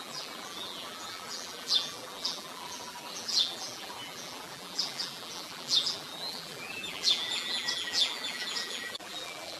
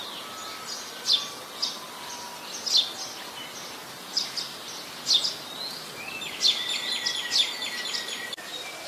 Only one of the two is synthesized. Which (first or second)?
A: first